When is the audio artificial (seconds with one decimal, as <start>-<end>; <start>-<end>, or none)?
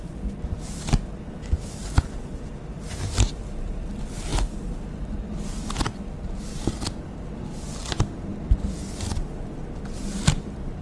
none